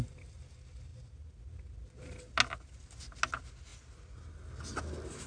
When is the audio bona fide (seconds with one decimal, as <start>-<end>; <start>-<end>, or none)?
0.0-5.3